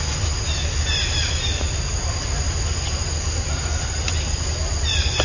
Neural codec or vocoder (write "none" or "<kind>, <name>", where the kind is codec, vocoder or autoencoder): none